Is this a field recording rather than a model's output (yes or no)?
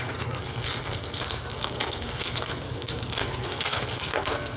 no